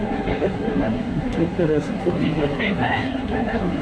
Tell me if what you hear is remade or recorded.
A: remade